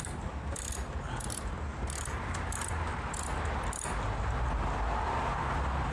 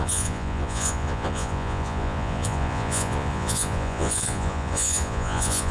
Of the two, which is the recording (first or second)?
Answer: first